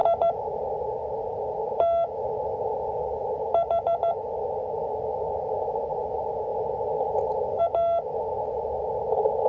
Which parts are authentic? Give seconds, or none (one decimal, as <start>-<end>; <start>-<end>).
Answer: 0.0-9.5